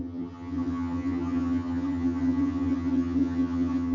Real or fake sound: fake